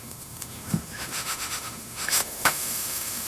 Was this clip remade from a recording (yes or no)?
yes